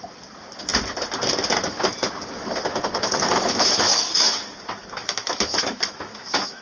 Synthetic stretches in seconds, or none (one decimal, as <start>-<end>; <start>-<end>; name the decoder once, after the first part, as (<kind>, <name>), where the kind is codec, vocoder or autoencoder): 2.7-4.4 (autoencoder, DAC-VAE); 5.0-6.6